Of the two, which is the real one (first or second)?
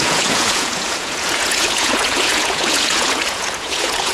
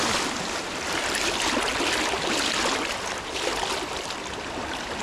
second